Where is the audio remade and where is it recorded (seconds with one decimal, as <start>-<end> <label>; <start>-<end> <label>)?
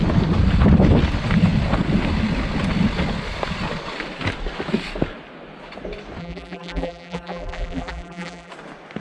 0.0-6.2 recorded; 6.2-8.5 remade; 8.5-9.0 recorded